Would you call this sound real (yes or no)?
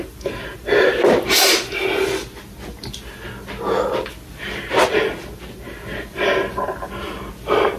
yes